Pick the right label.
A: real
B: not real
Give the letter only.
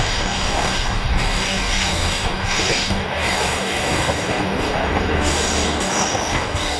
B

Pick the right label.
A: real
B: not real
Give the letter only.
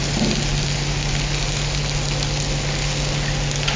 A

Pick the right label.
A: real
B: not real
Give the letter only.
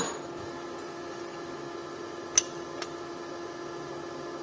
A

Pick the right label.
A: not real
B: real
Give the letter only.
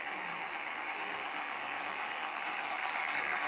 A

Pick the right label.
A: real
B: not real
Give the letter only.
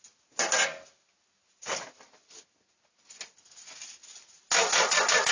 A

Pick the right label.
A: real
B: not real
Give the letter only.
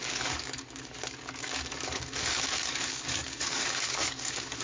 B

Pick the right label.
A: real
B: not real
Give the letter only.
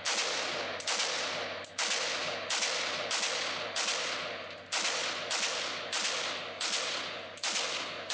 A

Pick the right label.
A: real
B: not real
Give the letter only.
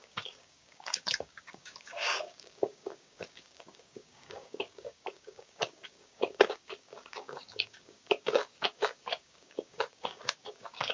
B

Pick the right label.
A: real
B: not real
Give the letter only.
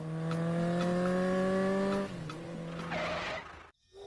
A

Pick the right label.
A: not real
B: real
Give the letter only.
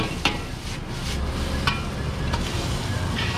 B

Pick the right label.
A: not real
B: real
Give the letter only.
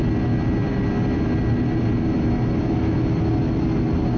B